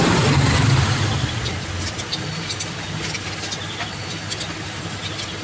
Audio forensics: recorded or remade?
recorded